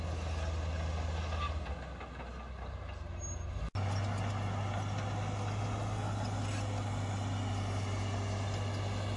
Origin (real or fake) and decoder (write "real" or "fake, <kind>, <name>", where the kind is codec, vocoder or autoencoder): real